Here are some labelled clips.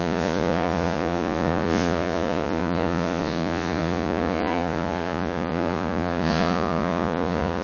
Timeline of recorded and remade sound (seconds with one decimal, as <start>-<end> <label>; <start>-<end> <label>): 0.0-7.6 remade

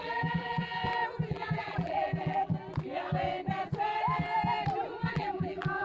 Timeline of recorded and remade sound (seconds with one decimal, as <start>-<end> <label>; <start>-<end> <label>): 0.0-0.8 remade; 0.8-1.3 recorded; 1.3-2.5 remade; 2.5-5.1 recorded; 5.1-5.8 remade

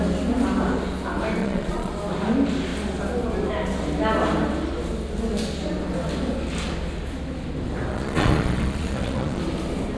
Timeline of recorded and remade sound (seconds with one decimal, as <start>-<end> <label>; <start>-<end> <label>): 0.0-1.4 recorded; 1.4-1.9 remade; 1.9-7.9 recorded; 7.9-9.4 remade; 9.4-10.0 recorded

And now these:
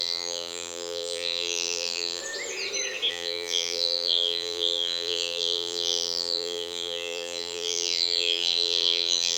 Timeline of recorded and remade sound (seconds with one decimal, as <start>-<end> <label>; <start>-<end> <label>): 0.0-2.2 remade; 2.2-3.1 recorded; 3.1-9.4 remade

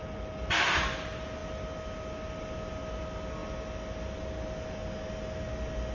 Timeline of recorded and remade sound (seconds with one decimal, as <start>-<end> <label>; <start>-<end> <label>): 0.0-5.9 recorded